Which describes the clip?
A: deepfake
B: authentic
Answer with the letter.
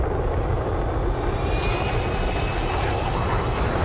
B